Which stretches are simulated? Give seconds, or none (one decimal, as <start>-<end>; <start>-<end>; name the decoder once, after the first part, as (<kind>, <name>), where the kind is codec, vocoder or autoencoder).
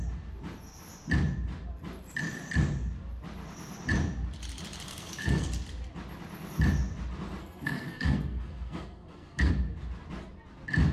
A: 4.9-5.5 (codec, SNAC); 7.4-9.5